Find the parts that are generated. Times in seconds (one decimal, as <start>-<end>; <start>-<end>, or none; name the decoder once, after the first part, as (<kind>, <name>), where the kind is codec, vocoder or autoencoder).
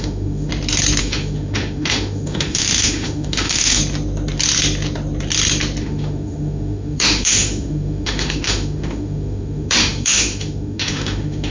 0.0-0.5 (autoencoder, DAC-VAE); 1.0-3.8; 5.8-11.5